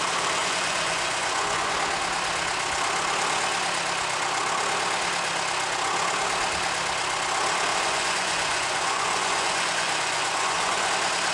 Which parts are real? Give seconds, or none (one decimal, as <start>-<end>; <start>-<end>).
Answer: 0.0-0.4; 1.7-7.7; 10.9-11.3